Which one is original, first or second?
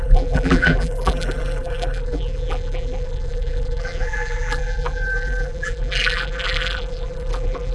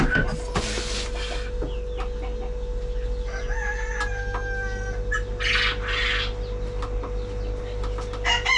second